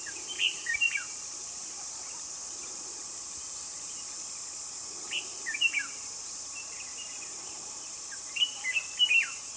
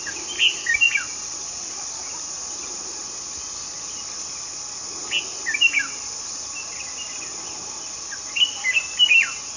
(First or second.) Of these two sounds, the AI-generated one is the first